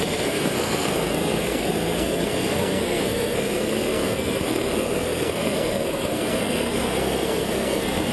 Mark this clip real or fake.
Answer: fake